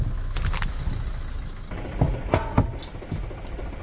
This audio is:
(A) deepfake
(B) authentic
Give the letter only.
B